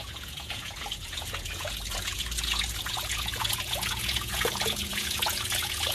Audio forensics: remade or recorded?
remade